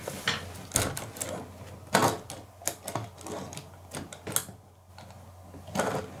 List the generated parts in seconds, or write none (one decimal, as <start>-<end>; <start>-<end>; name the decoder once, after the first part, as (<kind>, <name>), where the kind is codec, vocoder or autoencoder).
none